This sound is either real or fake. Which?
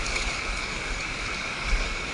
fake